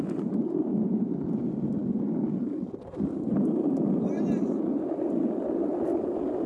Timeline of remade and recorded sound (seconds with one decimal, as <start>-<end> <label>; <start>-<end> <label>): 0.0-6.5 recorded